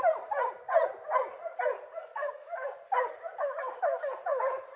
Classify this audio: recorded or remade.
recorded